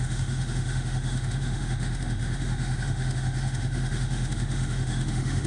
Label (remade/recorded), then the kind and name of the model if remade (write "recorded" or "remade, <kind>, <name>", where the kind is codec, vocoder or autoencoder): remade, autoencoder, DAC-VAE